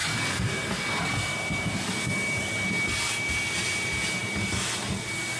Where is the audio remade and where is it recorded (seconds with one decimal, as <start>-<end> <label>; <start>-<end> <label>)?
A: 0.0-5.4 recorded